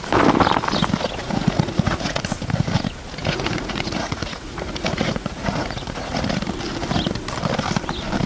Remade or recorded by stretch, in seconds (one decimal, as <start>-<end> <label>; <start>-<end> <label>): 0.0-1.2 recorded; 1.2-2.2 remade; 2.2-3.2 recorded; 3.2-6.2 remade; 6.2-8.3 recorded